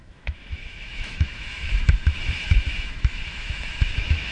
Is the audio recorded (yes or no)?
no